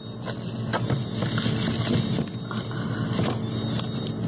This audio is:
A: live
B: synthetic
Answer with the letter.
A